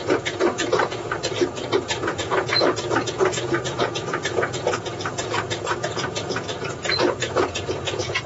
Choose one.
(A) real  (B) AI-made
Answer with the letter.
B